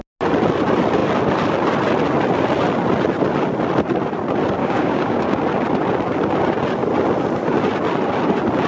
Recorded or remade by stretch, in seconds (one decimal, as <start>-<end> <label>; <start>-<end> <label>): 0.0-4.6 recorded; 4.6-5.4 remade; 5.4-8.7 recorded